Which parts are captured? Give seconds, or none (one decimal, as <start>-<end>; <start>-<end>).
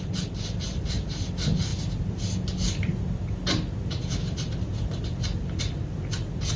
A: 0.0-6.6